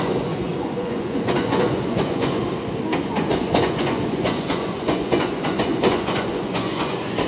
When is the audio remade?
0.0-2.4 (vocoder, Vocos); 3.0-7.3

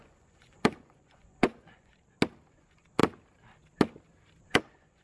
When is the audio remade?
0.0-1.9 (vocoder, Vocos); 2.5-3.0; 4.4-5.0

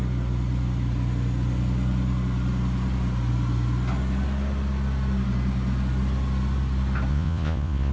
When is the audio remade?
7.1-7.9 (vocoder, Vocos)

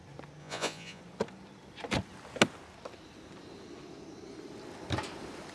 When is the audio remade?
0.4-1.0 (vocoder, Vocos)

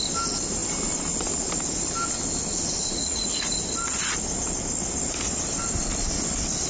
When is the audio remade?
2.8-3.6 (vocoder, Vocos)